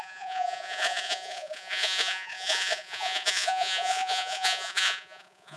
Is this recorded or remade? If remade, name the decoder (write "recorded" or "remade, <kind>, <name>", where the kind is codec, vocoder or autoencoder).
remade, vocoder, Vocos